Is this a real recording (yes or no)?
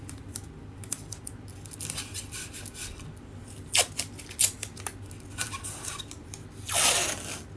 yes